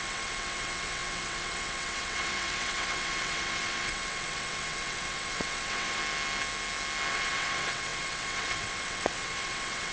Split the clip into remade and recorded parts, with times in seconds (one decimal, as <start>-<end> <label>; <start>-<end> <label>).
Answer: 0.0-6.0 remade; 6.0-7.1 recorded; 7.1-9.9 remade

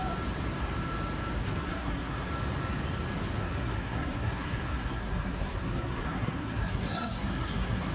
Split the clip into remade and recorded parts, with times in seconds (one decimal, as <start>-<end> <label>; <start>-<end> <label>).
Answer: 0.0-1.4 recorded; 1.4-2.3 remade; 2.3-3.4 recorded; 3.4-7.9 remade